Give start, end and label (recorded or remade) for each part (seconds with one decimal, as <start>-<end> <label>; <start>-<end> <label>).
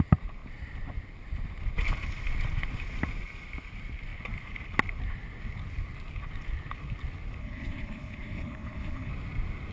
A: 0.0-7.4 recorded; 7.4-9.1 remade; 9.1-9.7 recorded